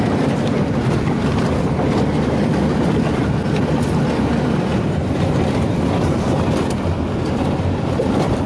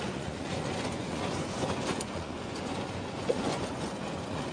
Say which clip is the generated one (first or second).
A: second